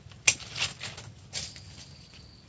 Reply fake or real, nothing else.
real